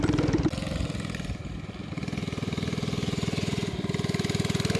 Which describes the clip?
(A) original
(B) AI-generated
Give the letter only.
A